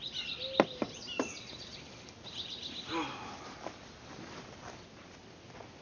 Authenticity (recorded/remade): recorded